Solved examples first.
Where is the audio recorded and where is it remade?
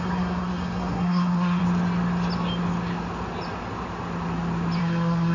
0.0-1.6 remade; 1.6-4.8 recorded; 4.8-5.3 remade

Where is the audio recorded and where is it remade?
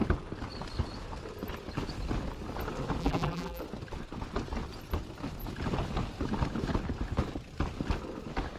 0.0-3.0 recorded; 3.0-3.6 remade; 3.6-8.6 recorded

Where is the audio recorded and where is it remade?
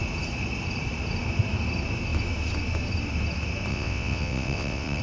0.0-3.7 recorded; 3.7-5.0 remade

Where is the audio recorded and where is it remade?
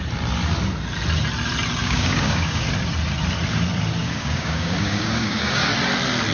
0.0-1.8 recorded; 1.8-2.6 remade; 2.6-4.0 recorded; 4.0-5.7 remade; 5.7-6.3 recorded